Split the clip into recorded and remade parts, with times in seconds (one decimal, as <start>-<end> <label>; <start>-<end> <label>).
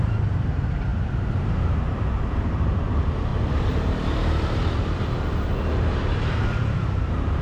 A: 0.0-7.4 remade